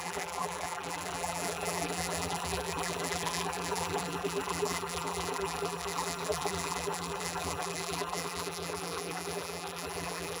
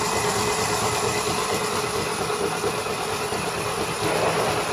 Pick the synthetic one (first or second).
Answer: first